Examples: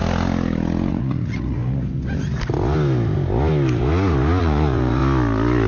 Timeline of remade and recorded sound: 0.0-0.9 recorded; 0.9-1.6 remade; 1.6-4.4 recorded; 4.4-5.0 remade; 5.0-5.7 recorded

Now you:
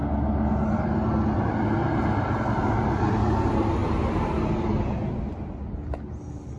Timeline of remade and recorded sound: 0.0-1.8 recorded; 1.8-3.2 remade; 3.2-3.8 recorded; 3.8-4.3 remade; 4.3-6.6 recorded